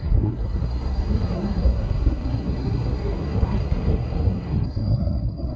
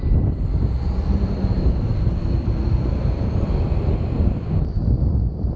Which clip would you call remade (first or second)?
first